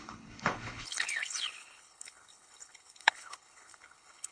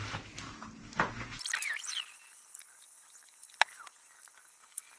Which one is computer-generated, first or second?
first